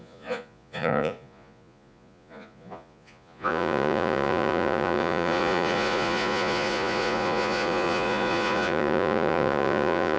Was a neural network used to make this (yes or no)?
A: yes